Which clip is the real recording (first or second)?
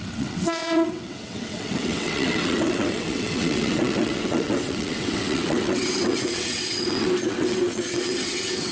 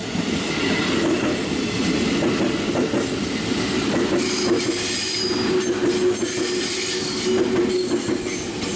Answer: second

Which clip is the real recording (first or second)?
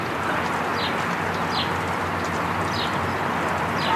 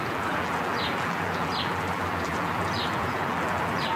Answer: first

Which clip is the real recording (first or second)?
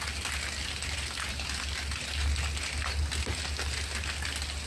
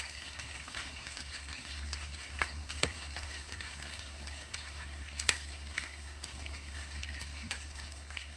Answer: first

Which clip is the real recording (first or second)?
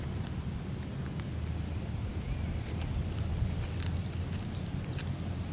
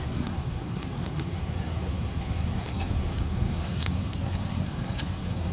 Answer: first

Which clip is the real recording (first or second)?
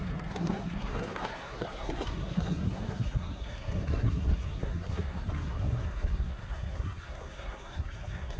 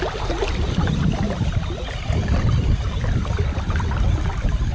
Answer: second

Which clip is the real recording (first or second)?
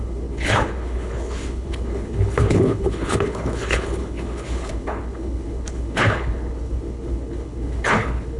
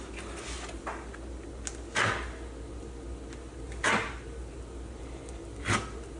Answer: second